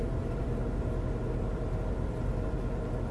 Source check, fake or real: real